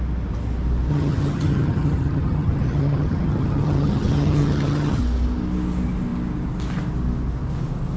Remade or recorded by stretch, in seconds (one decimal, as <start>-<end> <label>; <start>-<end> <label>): 0.0-0.9 recorded; 0.9-5.0 remade; 5.0-8.0 recorded